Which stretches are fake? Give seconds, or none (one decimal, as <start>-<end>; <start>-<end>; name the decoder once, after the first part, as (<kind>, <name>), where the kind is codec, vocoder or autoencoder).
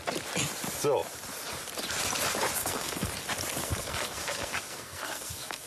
2.6-3.1 (codec, SNAC); 3.6-5.7